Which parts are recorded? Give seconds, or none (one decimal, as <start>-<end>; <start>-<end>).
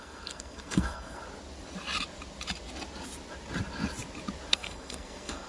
1.2-4.5